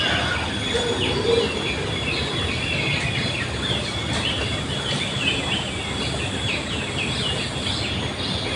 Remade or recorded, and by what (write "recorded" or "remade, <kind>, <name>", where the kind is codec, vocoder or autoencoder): recorded